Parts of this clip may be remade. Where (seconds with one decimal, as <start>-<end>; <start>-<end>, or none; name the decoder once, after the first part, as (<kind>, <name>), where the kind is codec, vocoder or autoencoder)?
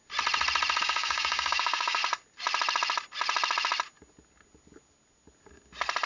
0.8-2.0 (codec, DAC)